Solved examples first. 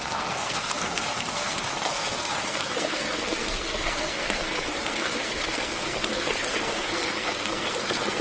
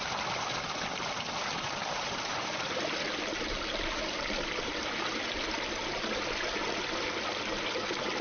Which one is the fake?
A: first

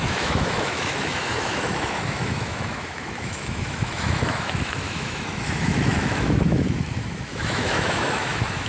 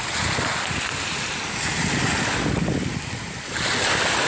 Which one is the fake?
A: first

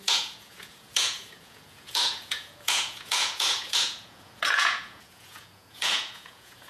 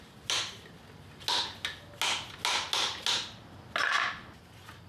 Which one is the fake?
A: first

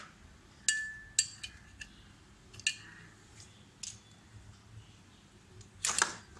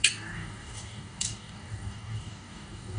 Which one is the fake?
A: second